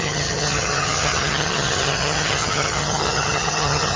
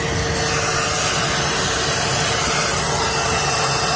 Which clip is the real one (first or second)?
second